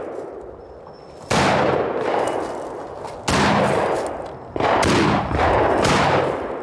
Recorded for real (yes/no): yes